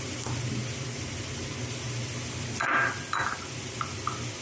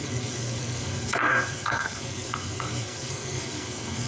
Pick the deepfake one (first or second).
second